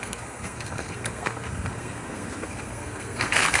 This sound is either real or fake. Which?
fake